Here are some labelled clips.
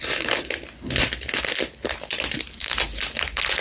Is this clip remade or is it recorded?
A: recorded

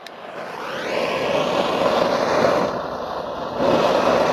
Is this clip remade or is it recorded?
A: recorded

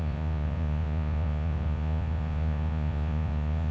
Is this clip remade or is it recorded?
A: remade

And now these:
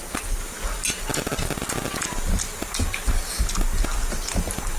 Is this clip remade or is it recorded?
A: recorded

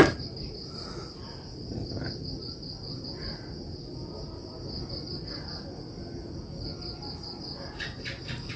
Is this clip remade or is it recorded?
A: recorded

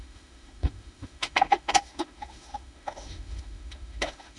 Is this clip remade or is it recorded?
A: remade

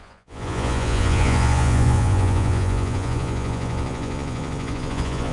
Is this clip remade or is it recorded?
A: remade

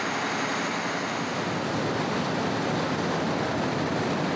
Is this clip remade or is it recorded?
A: recorded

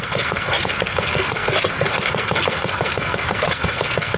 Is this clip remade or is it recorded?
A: remade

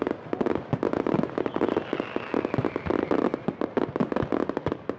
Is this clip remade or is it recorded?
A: recorded